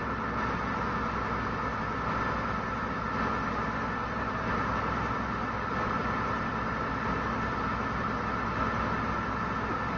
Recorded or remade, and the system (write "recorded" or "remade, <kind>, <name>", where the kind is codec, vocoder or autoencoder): recorded